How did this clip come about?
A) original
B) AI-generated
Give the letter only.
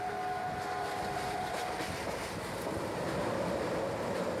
A